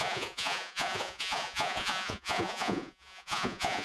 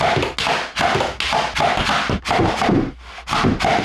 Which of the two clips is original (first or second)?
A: second